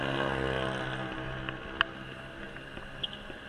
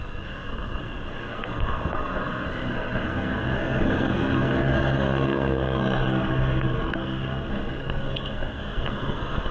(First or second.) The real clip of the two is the first